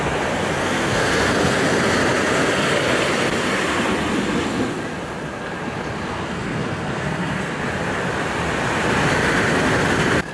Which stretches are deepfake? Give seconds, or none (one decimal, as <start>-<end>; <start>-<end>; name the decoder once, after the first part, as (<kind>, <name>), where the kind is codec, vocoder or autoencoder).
0.6-1.3 (codec, SNAC); 6.1-7.6